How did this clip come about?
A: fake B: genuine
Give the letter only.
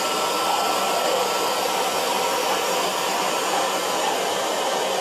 B